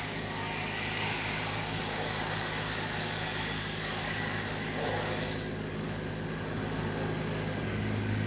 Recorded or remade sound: remade